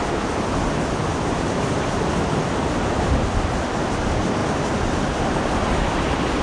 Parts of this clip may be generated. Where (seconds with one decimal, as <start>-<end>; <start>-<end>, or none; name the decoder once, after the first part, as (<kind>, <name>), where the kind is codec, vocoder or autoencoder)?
none